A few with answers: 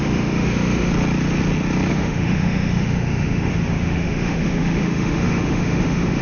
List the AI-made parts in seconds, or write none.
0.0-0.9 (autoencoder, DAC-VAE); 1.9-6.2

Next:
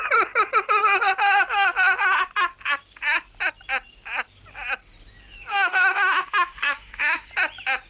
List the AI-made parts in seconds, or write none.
5.5-7.3 (autoencoder, DAC-VAE)

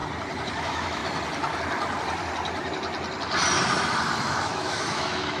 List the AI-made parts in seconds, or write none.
0.6-1.0 (autoencoder, DAC-VAE); 4.2-5.4

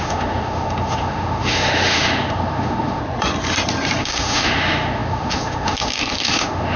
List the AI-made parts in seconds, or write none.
0.0-3.0 (autoencoder, DAC-VAE); 4.0-6.8

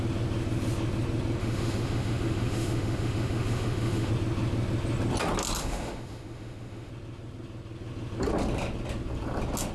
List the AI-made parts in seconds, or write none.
1.4-4.1 (autoencoder, DAC-VAE); 5.6-6.9